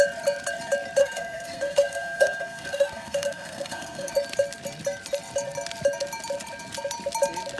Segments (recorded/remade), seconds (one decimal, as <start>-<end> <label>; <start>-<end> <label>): 0.0-1.0 recorded; 1.0-4.1 remade; 4.1-7.6 recorded